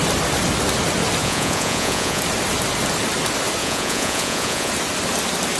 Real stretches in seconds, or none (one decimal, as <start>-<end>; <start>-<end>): 0.0-1.2; 2.2-3.6; 4.7-5.6